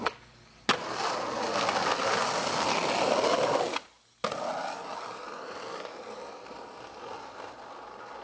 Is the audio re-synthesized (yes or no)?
no